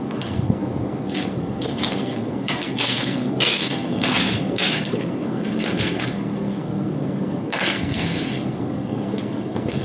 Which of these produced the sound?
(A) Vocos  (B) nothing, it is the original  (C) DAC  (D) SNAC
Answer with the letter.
D